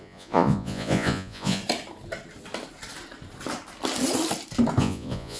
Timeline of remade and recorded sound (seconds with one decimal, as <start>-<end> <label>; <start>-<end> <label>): 0.0-1.6 remade; 1.6-4.8 recorded; 4.8-5.4 remade

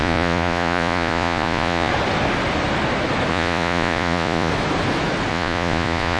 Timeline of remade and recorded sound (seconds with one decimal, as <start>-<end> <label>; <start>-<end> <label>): 0.0-1.9 remade; 1.9-3.3 recorded; 3.3-4.5 remade; 4.5-5.3 recorded; 5.3-6.2 remade

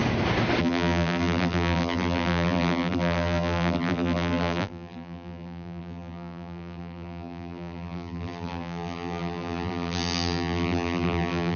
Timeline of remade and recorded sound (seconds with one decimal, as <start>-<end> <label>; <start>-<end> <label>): 0.0-0.6 recorded; 0.6-11.6 remade

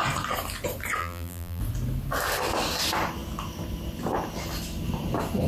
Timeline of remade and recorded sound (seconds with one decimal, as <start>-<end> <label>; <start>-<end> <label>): 0.0-1.0 recorded; 1.0-1.6 remade; 1.6-5.5 recorded

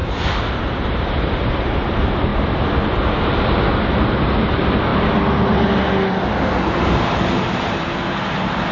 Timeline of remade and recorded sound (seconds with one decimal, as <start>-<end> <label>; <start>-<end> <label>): 0.0-2.3 remade; 2.3-4.4 recorded; 4.4-4.9 remade; 4.9-6.8 recorded; 6.8-8.7 remade

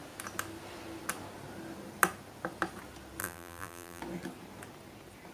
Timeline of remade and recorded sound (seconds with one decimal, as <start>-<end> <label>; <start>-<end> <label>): 0.0-3.2 recorded; 3.2-4.0 remade; 4.0-5.3 recorded

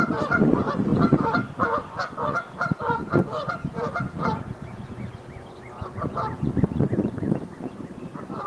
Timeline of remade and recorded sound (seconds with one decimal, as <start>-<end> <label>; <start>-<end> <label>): 0.0-8.5 remade

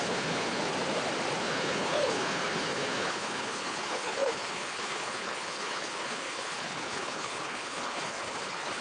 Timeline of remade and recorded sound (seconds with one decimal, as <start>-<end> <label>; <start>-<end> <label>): 0.0-0.7 remade; 0.7-1.4 recorded; 1.4-8.8 remade